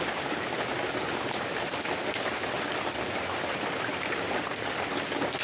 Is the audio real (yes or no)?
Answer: yes